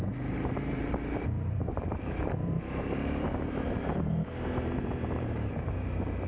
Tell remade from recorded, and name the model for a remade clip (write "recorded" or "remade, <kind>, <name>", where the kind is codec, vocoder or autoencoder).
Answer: remade, vocoder, BigVGAN v2